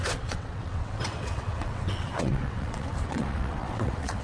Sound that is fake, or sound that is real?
fake